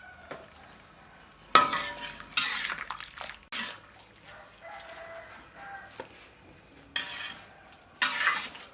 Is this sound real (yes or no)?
yes